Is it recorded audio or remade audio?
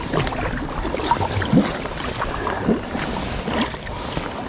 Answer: recorded